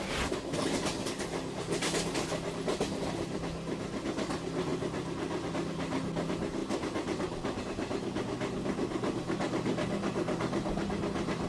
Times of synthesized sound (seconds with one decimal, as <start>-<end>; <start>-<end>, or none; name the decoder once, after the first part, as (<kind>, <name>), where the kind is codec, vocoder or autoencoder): none

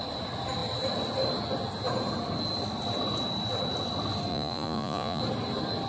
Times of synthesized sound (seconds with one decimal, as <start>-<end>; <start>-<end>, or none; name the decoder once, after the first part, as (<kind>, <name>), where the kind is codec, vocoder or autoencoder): 4.3-5.2 (vocoder, Vocos)

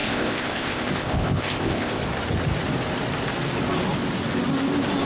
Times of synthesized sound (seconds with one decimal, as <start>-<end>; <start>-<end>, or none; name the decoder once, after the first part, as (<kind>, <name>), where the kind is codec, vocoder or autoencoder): 0.0-2.0 (codec, ZipCodec)